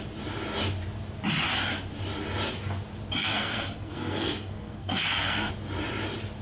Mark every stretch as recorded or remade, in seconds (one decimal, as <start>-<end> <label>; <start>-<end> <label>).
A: 0.0-3.2 recorded; 3.2-5.5 remade; 5.5-6.4 recorded